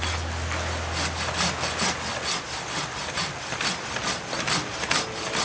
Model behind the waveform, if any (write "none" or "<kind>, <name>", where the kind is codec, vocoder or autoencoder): none